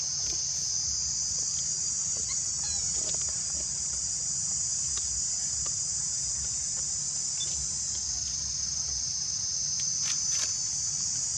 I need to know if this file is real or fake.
real